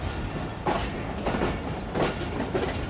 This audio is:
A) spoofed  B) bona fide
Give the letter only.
B